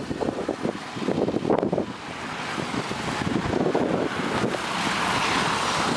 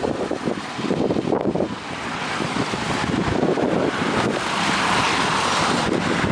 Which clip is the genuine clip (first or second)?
first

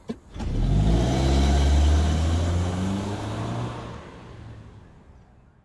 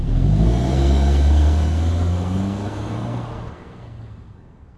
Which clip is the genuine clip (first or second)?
first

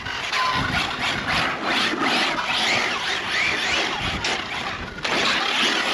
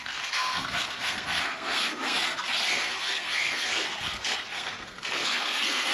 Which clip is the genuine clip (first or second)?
first